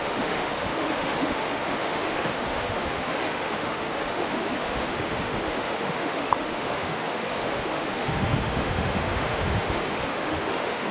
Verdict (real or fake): fake